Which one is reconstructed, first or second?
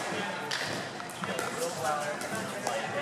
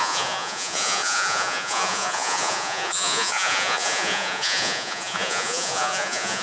second